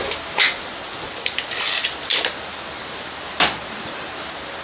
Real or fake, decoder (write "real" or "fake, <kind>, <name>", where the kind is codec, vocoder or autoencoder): real